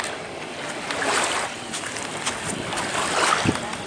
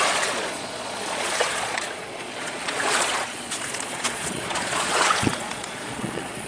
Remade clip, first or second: second